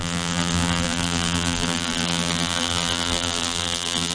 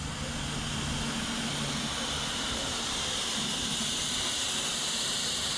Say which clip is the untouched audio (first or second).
second